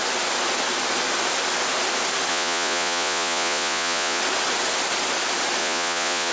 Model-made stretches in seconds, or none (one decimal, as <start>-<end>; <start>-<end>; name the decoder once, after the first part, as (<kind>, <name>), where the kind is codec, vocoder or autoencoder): 2.3-4.2 (vocoder, Vocos); 5.6-6.3